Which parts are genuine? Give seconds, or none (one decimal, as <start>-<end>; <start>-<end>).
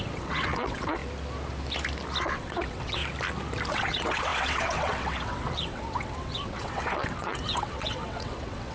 1.0-2.2; 3.0-3.7